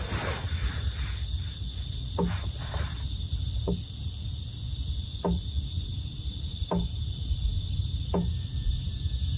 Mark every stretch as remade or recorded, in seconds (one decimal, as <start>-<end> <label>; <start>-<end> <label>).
0.0-9.4 recorded